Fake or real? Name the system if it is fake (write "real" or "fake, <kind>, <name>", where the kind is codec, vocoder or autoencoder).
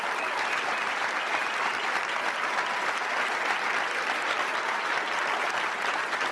real